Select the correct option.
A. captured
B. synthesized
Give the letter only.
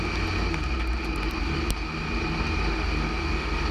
A